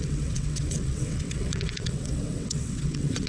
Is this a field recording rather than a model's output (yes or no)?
no